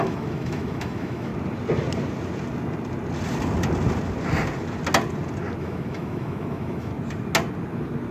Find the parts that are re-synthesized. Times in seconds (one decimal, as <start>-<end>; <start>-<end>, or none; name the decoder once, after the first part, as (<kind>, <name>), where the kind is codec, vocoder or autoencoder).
0.0-1.3 (autoencoder, DAC-VAE); 5.6-6.9

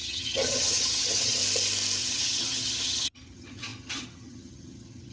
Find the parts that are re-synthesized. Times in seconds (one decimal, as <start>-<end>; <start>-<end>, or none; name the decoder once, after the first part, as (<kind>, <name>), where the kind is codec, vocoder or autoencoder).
0.0-1.4 (vocoder, HiFi-GAN); 2.0-5.1

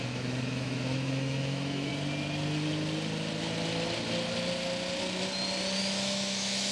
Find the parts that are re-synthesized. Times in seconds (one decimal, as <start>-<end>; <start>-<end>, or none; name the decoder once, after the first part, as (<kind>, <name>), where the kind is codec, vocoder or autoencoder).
0.0-1.9 (autoencoder, DAC-VAE); 5.8-6.7

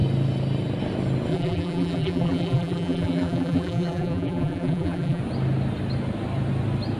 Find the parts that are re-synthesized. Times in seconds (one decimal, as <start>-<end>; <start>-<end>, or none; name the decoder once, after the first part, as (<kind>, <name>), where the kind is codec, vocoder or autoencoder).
1.3-5.2 (vocoder, BigVGAN v2)

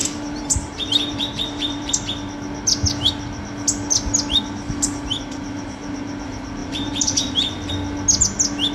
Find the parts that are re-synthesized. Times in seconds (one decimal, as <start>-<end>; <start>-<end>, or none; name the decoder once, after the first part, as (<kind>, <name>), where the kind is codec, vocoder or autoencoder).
0.0-1.9 (vocoder, BigVGAN v2); 6.6-7.7